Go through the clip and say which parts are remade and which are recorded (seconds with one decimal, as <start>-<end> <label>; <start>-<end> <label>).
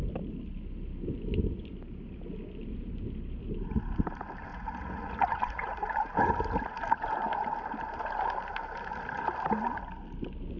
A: 0.0-4.5 recorded; 4.5-6.1 remade; 6.1-10.6 recorded